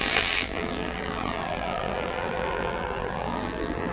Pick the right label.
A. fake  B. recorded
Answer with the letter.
A